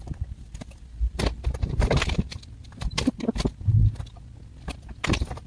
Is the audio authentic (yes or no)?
yes